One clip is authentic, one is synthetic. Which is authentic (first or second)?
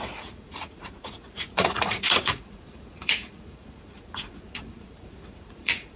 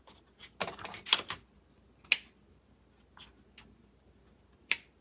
second